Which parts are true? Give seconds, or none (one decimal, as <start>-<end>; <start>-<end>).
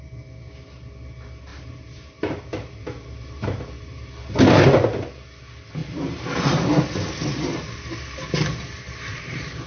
0.0-1.5; 4.1-5.8; 6.8-9.1